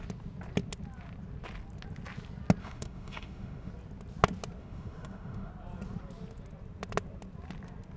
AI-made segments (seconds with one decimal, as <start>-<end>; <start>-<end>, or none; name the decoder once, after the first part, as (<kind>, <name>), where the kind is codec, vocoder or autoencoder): 2.6-3.7 (autoencoder, DAC-VAE); 4.6-5.5